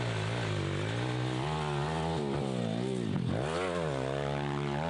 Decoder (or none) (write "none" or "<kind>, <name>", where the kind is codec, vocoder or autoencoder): none